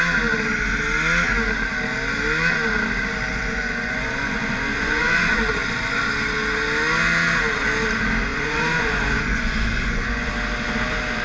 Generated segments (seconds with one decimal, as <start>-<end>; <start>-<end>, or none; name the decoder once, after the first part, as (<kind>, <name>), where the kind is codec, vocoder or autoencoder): 3.3-5.4 (vocoder, Vocos); 8.3-10.3